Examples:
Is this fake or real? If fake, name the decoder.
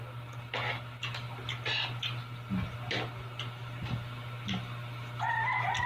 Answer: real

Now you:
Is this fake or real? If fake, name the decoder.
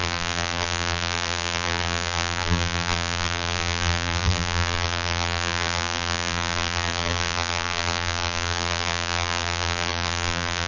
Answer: fake, vocoder, BigVGAN v2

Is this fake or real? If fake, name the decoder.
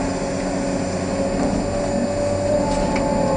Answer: real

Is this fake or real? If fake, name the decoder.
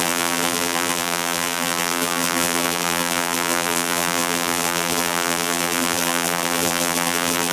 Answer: fake, vocoder, BigVGAN v2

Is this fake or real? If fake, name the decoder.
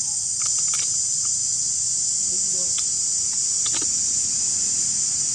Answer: real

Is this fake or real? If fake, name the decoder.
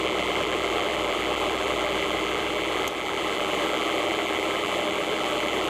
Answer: fake, vocoder, BigVGAN v2